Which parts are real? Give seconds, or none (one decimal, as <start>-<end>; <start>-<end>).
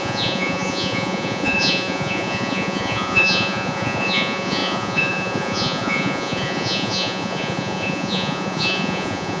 none